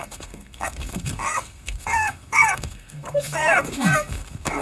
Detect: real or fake fake